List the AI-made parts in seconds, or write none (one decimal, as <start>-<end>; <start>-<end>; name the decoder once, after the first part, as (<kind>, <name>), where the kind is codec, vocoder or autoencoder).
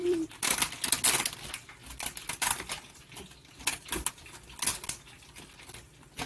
0.0-0.7 (vocoder, BigVGAN v2); 1.8-2.7